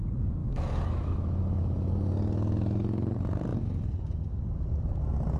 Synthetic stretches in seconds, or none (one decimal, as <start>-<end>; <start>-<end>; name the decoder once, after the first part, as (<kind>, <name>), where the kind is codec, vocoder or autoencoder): 0.4-1.9 (autoencoder, DAC-VAE)